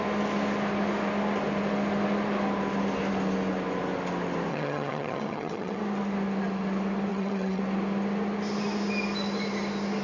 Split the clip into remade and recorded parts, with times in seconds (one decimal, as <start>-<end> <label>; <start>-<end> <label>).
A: 0.0-4.5 recorded; 4.5-5.8 remade; 5.8-7.1 recorded; 7.1-7.6 remade; 7.6-10.0 recorded